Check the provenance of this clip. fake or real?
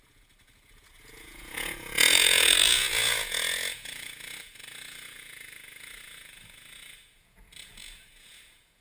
fake